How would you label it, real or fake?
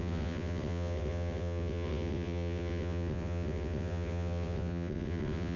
fake